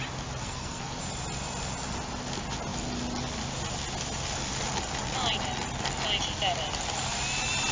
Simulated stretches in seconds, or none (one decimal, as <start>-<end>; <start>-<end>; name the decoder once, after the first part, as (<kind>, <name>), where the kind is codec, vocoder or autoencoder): 0.4-1.0 (codec, SNAC)